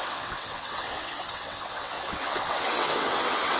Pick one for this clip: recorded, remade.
remade